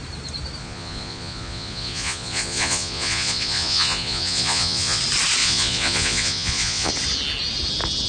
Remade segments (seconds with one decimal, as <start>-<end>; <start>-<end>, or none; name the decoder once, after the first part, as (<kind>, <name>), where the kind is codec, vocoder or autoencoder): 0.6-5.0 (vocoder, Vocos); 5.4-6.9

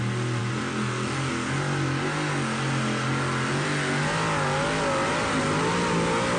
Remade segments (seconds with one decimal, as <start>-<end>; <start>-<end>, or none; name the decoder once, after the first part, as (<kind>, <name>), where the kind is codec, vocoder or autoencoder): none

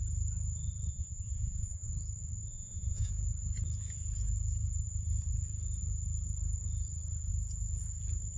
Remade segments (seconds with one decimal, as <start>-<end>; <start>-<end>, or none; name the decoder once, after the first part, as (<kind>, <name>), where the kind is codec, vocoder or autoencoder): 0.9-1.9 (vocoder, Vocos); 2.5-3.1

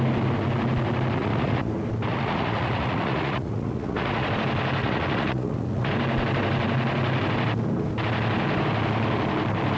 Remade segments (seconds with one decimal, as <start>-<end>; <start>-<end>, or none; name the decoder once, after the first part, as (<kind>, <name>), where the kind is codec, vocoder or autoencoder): 1.2-1.7 (vocoder, Vocos); 2.1-4.3; 4.8-5.9

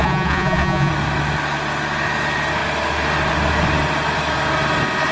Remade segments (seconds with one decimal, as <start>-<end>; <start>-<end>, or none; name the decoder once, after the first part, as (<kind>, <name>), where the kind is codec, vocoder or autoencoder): 0.0-0.9 (vocoder, Vocos)

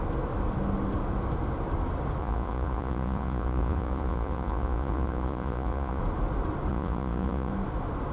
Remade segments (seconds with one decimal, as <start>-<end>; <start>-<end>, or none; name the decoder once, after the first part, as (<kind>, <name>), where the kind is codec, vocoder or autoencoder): 2.2-6.0 (vocoder, Vocos); 6.7-7.5

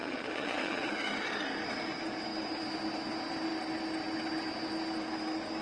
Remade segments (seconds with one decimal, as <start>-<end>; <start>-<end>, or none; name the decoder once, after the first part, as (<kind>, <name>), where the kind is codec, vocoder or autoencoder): 0.0-0.9 (vocoder, Vocos)

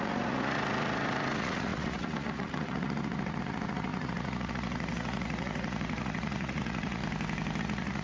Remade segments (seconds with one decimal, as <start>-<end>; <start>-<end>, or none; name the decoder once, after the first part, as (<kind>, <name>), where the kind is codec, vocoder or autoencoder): 0.0-7.0 (vocoder, Vocos); 7.6-8.0